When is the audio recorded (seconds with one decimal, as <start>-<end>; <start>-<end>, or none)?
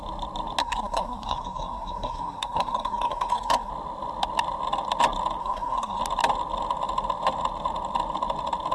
0.0-0.6; 3.7-5.4; 6.0-8.7